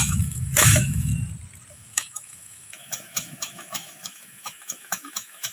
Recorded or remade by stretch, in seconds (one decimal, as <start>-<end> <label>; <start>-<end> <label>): 0.0-1.1 remade; 1.1-1.7 recorded; 1.7-5.5 remade